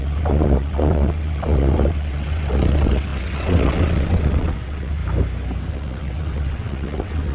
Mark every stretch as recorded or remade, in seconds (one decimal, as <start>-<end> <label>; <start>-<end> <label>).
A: 0.0-5.0 remade; 5.0-5.7 recorded; 5.7-7.3 remade